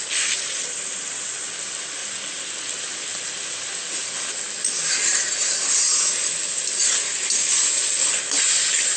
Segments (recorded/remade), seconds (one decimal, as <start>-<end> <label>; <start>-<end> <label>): 0.0-9.0 recorded